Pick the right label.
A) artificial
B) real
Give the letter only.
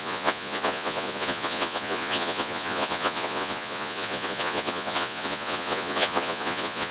A